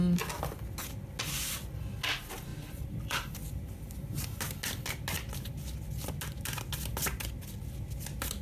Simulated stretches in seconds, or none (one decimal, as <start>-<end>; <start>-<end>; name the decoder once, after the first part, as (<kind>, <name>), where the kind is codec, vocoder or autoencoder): 2.5-3.3 (vocoder, BigVGAN v2)